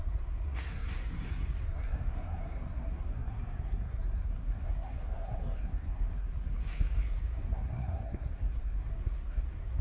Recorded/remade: remade